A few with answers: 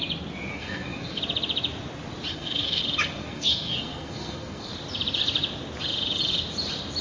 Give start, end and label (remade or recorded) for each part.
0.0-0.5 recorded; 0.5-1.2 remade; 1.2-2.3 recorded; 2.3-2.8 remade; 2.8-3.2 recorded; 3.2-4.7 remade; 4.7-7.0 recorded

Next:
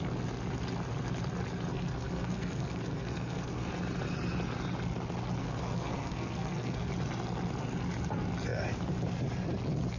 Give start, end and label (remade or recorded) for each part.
0.0-1.7 recorded; 1.7-3.7 remade; 3.7-5.4 recorded; 5.4-6.9 remade; 6.9-10.0 recorded

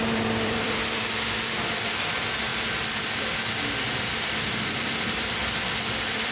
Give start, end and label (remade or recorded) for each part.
0.0-2.5 remade; 2.5-5.7 recorded; 5.7-6.3 remade

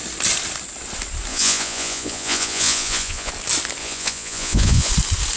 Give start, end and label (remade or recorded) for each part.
0.0-1.3 recorded; 1.3-3.3 remade; 3.3-3.8 recorded; 3.8-4.9 remade; 4.9-5.4 recorded

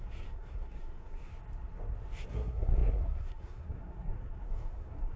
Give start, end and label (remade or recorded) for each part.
0.0-1.3 remade; 1.3-2.3 recorded; 2.3-5.2 remade